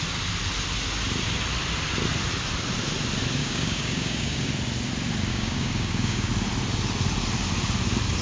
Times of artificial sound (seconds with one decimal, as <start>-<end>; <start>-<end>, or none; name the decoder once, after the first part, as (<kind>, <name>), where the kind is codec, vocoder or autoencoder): 3.4-4.5 (codec, DAC); 5.3-6.3

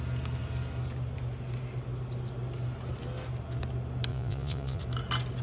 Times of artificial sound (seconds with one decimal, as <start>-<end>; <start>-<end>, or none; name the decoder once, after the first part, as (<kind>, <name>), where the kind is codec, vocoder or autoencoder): 4.1-4.8 (vocoder, Vocos)